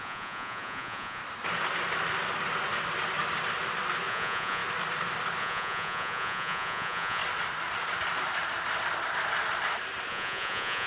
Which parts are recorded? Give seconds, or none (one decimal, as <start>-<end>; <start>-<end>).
1.2-4.1; 4.6-5.4; 7.2-10.1